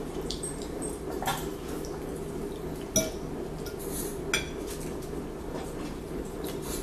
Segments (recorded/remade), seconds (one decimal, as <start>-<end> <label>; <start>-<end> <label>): 0.0-1.3 remade; 1.3-5.4 recorded; 5.4-6.8 remade